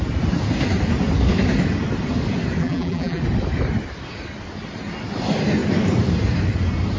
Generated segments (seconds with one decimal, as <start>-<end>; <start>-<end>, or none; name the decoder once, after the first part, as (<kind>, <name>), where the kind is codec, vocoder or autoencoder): 2.6-3.2 (vocoder, BigVGAN v2)